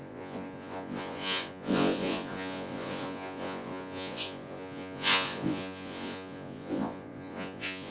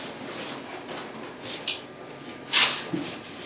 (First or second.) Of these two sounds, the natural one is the second